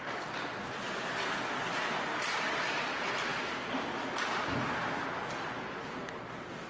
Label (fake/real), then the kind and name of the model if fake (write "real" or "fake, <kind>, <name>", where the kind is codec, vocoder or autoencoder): real